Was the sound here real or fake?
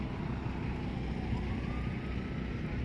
real